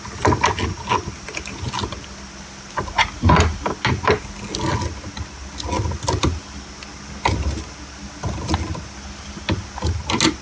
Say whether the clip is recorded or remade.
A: recorded